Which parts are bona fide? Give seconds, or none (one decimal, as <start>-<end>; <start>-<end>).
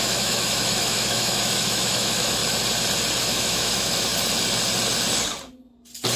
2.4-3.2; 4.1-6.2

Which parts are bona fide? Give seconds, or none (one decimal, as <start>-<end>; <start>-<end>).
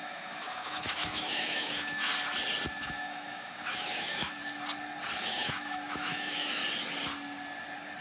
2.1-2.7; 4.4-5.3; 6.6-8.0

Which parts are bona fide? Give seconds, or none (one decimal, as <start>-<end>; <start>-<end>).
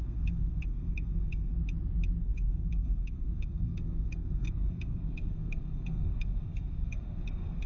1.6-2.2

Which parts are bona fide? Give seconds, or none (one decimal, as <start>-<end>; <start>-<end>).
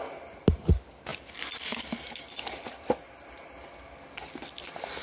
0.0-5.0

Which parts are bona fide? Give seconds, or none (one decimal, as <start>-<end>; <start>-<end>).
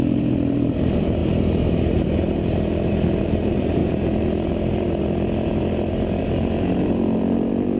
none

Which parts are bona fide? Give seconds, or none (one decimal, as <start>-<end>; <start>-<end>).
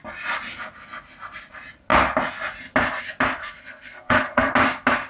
0.0-3.4; 4.5-5.1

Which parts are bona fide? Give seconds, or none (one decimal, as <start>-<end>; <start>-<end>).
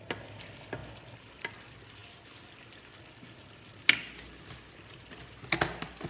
0.0-6.1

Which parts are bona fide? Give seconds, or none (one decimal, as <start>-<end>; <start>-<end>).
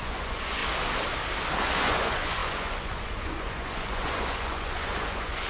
0.6-1.6